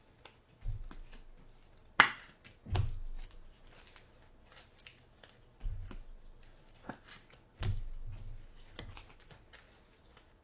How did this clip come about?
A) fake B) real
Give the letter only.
B